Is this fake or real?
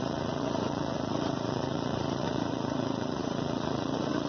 fake